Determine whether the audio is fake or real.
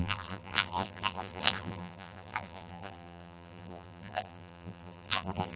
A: fake